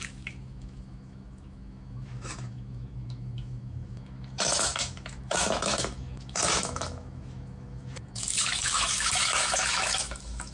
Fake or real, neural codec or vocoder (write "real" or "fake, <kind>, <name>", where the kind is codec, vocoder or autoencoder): fake, autoencoder, DAC-VAE